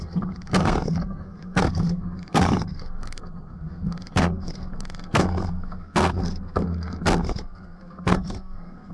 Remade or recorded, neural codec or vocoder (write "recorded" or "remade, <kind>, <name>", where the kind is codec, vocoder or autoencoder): remade, codec, SNAC